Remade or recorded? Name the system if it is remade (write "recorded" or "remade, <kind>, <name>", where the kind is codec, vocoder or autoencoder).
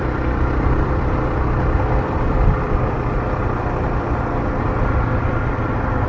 remade, vocoder, BigVGAN v2